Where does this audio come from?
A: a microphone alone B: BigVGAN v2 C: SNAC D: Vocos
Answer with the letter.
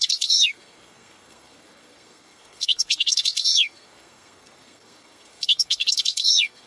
C